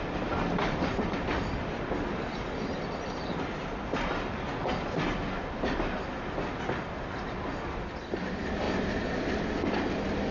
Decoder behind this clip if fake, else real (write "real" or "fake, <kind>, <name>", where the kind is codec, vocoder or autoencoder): real